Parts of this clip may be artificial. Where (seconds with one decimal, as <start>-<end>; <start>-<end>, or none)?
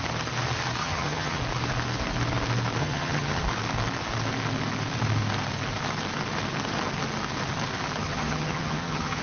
0.8-1.4; 2.8-3.4; 8.0-9.2